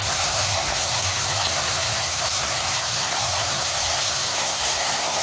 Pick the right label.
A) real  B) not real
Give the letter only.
B